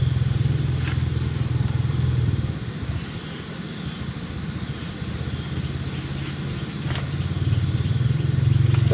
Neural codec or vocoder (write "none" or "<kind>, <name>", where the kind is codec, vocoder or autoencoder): none